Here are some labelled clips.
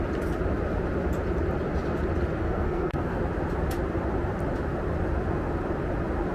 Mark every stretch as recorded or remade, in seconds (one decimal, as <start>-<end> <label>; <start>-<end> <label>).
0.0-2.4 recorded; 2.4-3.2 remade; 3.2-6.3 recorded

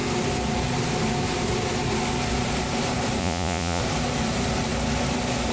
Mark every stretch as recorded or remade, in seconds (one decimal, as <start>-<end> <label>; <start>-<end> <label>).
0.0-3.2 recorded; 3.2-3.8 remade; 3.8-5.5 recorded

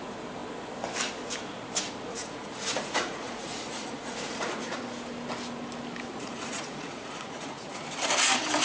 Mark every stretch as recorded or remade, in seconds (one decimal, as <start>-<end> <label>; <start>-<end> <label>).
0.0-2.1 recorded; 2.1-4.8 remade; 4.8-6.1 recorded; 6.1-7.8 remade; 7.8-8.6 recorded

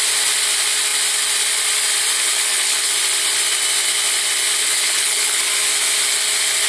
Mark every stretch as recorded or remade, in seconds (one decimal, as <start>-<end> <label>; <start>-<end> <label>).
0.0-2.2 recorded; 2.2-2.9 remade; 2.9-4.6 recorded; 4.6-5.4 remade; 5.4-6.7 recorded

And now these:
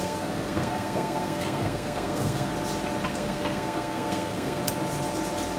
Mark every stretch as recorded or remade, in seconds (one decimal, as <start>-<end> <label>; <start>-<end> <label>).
0.0-2.5 remade; 2.5-3.1 recorded; 3.1-4.6 remade; 4.6-5.6 recorded

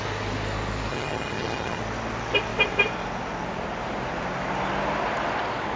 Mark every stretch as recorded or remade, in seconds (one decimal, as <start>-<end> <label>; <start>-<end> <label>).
0.0-0.9 recorded; 0.9-1.8 remade; 1.8-5.8 recorded

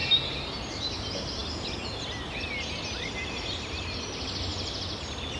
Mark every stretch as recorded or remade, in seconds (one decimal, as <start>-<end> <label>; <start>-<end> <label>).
0.0-5.4 recorded

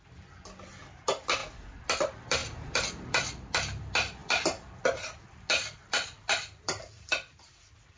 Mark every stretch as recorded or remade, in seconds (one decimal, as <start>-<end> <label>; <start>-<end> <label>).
0.0-1.4 remade; 1.4-2.0 recorded; 2.0-2.4 remade; 2.4-2.9 recorded; 2.9-8.0 remade